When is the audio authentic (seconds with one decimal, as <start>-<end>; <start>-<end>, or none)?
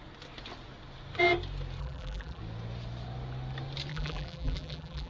0.0-1.8; 2.4-3.9